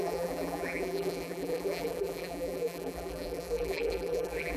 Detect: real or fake fake